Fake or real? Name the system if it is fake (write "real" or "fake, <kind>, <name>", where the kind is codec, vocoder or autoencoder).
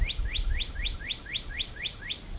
real